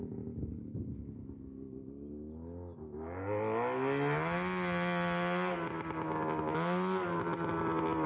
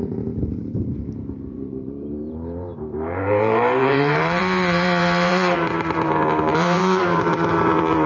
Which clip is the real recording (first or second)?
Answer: first